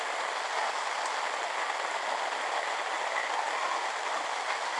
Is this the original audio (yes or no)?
yes